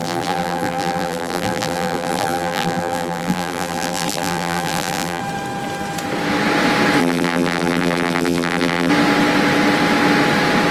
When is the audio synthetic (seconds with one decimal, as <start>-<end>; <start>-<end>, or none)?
0.0-5.2; 7.0-8.9